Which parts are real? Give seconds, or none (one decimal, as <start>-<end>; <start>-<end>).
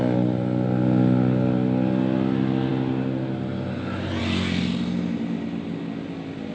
0.0-6.5